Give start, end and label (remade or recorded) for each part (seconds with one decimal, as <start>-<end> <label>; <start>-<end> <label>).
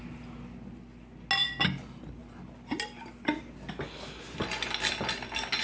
0.0-5.6 recorded